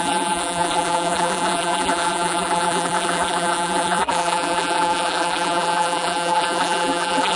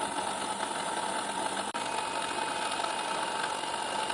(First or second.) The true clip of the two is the second